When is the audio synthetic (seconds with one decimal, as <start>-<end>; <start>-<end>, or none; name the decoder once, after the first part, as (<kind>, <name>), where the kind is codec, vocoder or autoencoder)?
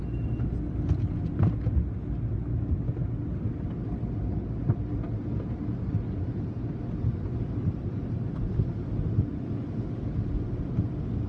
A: none